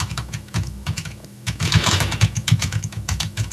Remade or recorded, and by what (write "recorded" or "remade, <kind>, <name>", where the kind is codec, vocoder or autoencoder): remade, autoencoder, DAC-VAE